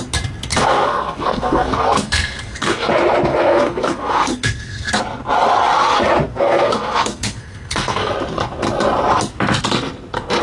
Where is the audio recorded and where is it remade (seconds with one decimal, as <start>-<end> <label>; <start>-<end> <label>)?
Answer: 0.0-0.5 recorded; 0.5-2.9 remade; 2.9-3.3 recorded; 3.3-5.0 remade; 5.0-6.3 recorded; 6.3-8.1 remade; 8.1-10.4 recorded